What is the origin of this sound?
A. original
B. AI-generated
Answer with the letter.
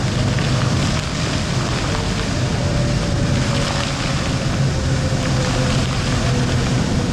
A